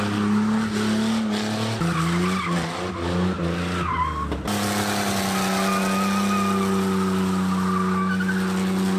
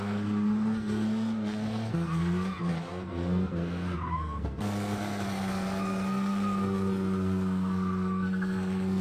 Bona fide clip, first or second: first